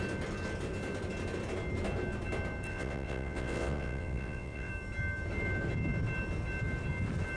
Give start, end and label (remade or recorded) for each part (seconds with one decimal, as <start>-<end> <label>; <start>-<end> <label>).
0.0-2.7 recorded; 2.7-4.7 remade; 4.7-7.4 recorded